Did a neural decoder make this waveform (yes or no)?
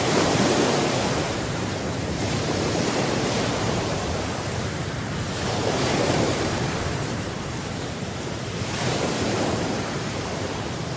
yes